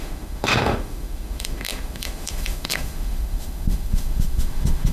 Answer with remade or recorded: remade